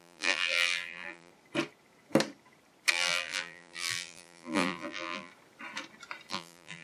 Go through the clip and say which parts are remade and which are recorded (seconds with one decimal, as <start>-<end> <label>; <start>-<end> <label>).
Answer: 0.0-1.3 remade; 1.3-2.9 recorded; 2.9-5.3 remade; 5.3-6.3 recorded; 6.3-6.8 remade